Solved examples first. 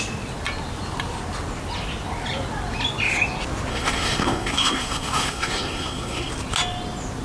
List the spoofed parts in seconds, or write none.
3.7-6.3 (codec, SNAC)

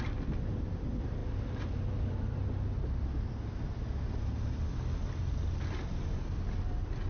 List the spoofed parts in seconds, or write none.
none

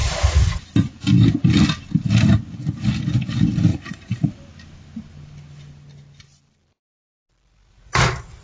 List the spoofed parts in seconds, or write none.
3.7-4.3 (vocoder, Vocos)

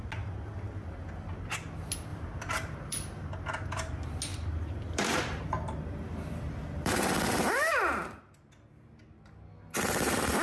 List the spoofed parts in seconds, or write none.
2.1-3.3 (vocoder, BigVGAN v2); 4.3-8.2